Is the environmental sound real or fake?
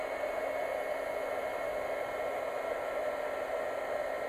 real